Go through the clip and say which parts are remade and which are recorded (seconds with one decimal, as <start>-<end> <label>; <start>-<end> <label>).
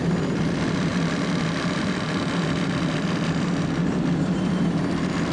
0.0-0.9 recorded; 0.9-3.8 remade; 3.8-5.3 recorded